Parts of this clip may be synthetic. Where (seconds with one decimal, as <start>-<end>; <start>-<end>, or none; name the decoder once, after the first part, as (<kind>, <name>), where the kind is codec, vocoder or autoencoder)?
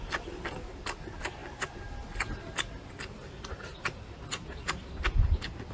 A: none